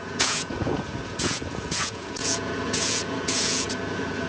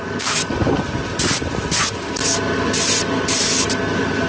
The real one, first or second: second